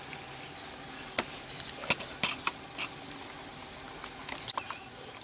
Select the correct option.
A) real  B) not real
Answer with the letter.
A